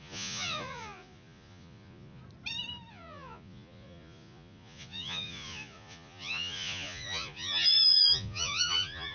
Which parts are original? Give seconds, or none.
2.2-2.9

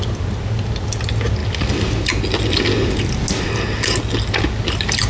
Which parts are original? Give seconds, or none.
0.0-5.1

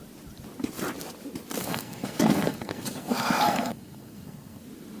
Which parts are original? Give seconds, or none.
0.0-1.6; 4.6-5.0

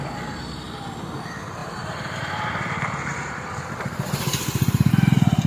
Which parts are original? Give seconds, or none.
0.0-1.6; 4.9-5.5

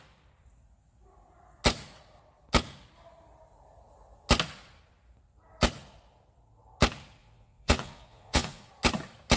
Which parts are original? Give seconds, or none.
0.0-7.2; 8.7-9.4

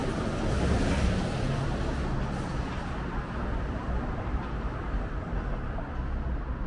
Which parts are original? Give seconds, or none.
0.0-6.7